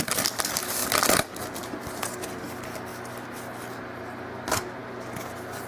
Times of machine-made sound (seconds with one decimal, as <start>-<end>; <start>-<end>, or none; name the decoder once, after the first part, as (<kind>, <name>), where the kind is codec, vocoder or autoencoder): 0.8-2.0 (vocoder, BigVGAN v2)